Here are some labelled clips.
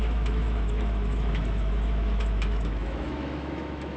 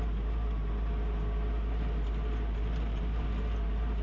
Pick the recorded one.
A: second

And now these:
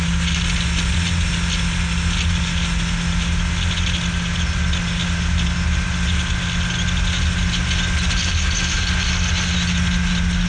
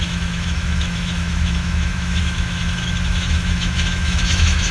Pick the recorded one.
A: first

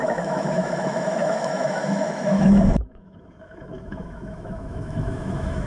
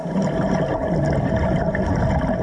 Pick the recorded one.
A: second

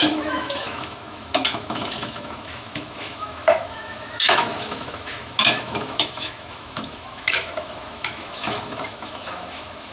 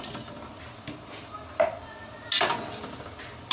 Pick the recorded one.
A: second